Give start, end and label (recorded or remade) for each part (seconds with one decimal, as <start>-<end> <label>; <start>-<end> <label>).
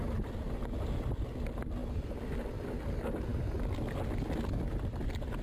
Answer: 0.0-5.4 recorded